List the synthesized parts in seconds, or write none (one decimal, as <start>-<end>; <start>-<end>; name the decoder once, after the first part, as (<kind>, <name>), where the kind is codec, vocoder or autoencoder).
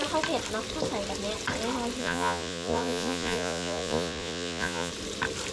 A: 2.0-4.9 (vocoder, Vocos)